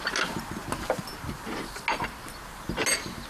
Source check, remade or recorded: recorded